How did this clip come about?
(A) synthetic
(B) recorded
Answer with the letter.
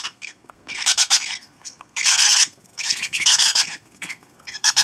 A